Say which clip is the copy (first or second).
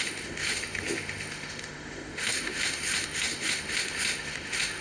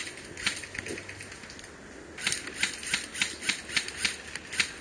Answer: first